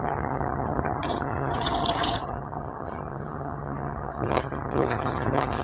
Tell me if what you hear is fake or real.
fake